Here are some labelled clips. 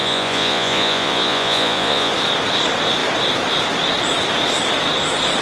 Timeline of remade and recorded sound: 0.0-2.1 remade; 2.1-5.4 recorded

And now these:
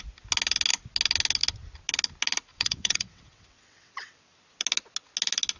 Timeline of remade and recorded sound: 0.0-2.5 recorded; 2.5-4.4 remade; 4.4-5.6 recorded

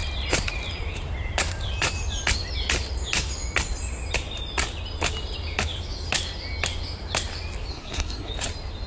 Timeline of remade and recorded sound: 0.0-7.7 recorded; 7.7-8.3 remade; 8.3-8.9 recorded

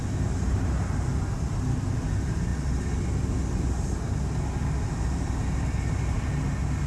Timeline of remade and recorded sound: 0.0-6.9 recorded

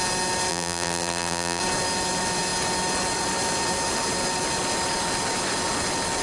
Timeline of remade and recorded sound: 0.0-0.5 recorded; 0.5-1.6 remade; 1.6-6.2 recorded

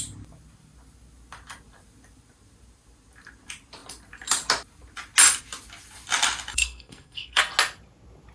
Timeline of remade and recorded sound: 0.0-6.5 recorded; 6.5-7.4 remade; 7.4-8.3 recorded

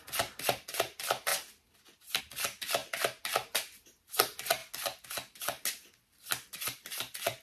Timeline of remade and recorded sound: 0.0-1.3 remade; 1.3-2.2 recorded; 2.2-2.8 remade; 2.8-4.0 recorded; 4.0-4.6 remade; 4.6-5.8 recorded; 5.8-7.4 remade

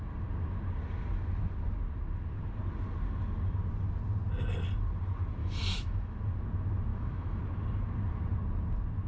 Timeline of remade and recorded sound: 0.0-5.4 recorded; 5.4-6.2 remade; 6.2-6.9 recorded; 6.9-7.4 remade; 7.4-9.1 recorded